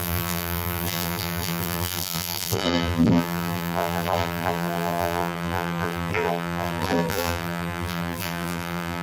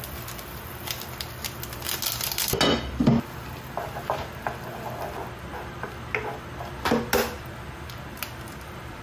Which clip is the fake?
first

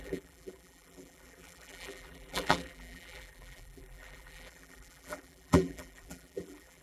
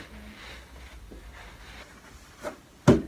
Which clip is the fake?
first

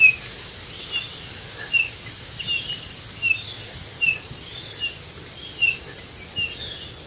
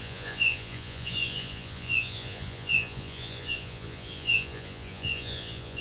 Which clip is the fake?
second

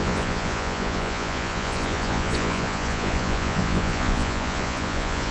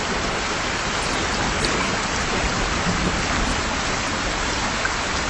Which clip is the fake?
first